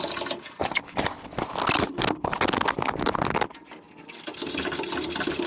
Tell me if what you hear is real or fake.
real